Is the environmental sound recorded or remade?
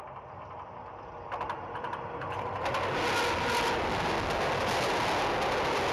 recorded